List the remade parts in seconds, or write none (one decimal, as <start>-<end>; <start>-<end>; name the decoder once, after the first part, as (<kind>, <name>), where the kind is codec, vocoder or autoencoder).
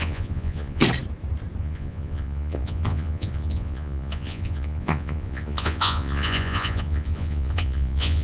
0.0-0.8 (vocoder, Vocos); 1.6-8.2